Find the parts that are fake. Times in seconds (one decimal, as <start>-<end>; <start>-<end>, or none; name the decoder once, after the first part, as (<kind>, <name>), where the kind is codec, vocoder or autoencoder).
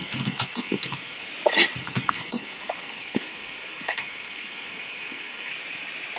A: 0.0-1.3 (codec, SNAC); 1.8-5.5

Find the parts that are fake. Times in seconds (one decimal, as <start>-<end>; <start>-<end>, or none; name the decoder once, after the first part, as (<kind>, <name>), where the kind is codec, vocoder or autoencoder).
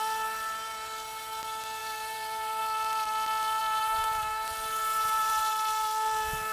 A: 1.8-2.6 (vocoder, BigVGAN v2); 3.6-5.5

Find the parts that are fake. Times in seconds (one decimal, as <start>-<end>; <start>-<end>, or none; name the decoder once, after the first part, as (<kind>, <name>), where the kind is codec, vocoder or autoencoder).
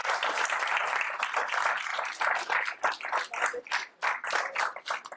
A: none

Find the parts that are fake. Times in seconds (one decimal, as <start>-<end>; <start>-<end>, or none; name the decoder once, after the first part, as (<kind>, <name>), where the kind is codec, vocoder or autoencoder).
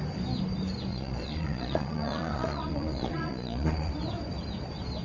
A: 0.9-3.9 (vocoder, Vocos)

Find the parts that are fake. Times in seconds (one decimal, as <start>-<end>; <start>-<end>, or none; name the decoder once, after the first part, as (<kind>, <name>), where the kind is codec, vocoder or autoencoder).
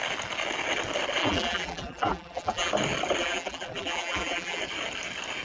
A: 1.2-2.7 (vocoder, BigVGAN v2); 3.2-4.6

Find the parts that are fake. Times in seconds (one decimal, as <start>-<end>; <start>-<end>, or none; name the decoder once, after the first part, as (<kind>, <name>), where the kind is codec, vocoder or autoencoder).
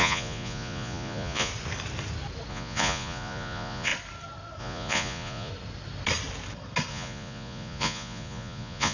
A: 0.0-1.5 (vocoder, Vocos); 2.5-3.9; 4.6-5.5; 6.9-8.9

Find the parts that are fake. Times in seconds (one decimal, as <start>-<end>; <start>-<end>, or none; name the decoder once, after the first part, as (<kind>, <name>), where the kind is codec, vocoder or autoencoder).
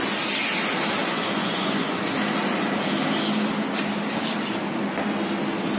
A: 1.0-2.0 (vocoder, Vocos)